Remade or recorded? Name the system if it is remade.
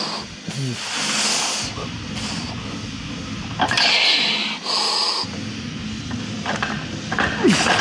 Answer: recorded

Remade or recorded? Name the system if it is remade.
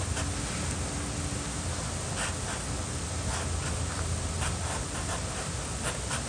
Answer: recorded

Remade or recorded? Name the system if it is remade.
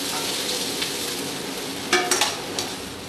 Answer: recorded